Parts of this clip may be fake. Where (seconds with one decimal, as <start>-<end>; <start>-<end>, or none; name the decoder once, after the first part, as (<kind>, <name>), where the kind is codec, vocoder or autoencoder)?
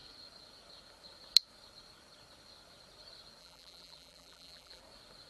3.4-4.8 (vocoder, BigVGAN v2)